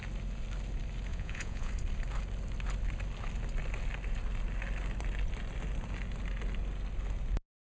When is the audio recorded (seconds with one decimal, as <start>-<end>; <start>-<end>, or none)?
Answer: 0.0-1.1; 1.7-7.7